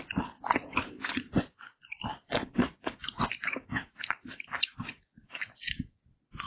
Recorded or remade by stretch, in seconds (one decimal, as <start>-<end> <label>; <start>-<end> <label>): 0.0-1.0 recorded; 1.0-1.7 remade; 1.7-2.1 recorded; 2.1-6.0 remade; 6.0-6.5 recorded